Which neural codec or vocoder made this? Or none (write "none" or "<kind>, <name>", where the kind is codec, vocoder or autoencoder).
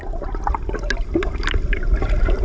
none